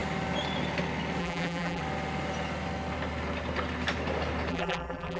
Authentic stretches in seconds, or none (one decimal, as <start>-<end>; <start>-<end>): 0.0-1.2; 1.8-4.5